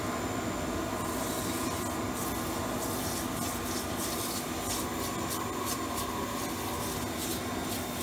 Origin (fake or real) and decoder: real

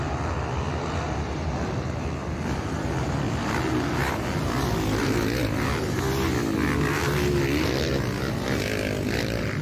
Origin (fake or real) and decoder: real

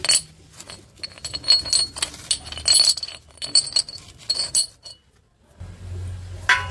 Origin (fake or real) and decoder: real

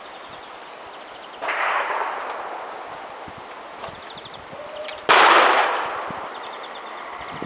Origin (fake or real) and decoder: real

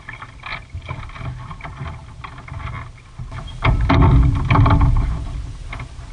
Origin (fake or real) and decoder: real